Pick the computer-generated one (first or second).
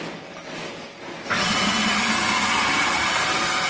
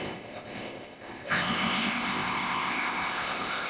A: second